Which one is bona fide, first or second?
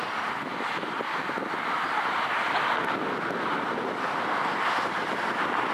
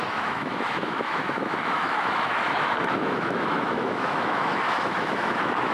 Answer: first